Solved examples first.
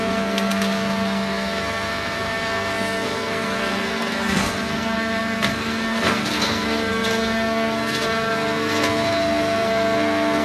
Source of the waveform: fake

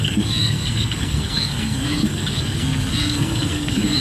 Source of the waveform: fake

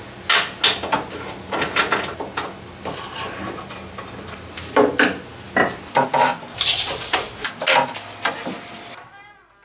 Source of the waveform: real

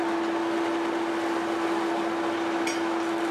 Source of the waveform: real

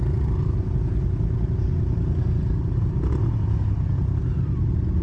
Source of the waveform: real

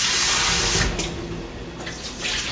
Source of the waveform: real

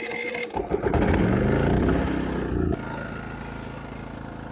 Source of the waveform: real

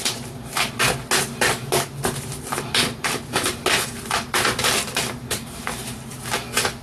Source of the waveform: real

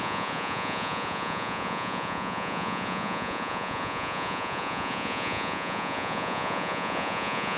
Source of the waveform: fake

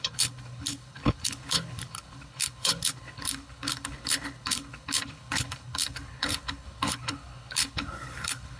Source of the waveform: fake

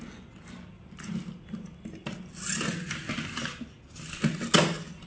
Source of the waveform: real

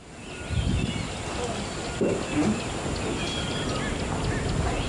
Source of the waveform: real